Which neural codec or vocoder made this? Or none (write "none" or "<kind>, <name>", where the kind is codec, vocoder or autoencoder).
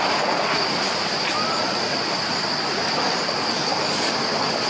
none